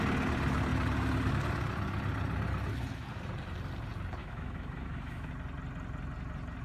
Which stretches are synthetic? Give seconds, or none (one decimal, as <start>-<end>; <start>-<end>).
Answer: 4.2-5.3